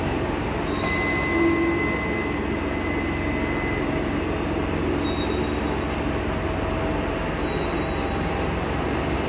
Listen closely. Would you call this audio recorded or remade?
recorded